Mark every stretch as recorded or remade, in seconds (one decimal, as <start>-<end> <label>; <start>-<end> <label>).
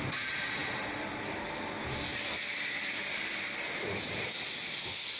0.0-5.2 recorded